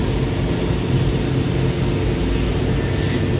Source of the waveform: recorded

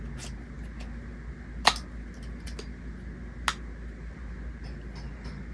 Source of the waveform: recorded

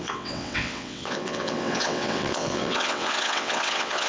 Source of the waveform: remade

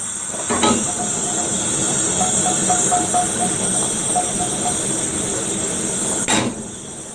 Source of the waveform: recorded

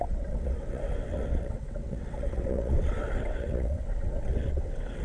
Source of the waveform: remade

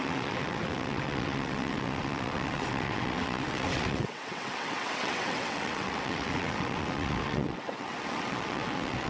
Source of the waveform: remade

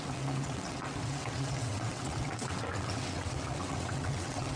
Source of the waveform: remade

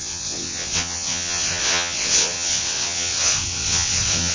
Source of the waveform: remade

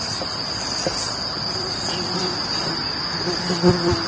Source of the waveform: recorded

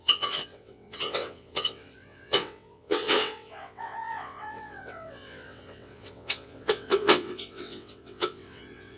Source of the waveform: remade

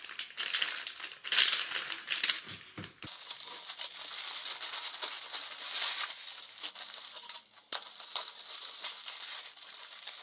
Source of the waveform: recorded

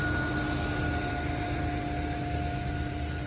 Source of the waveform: recorded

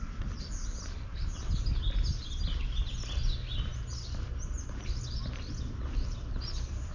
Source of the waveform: recorded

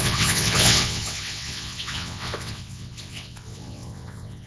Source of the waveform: remade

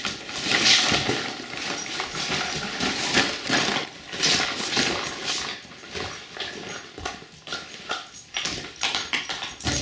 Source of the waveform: recorded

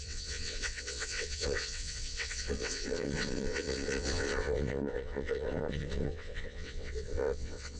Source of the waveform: remade